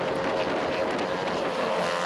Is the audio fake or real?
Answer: real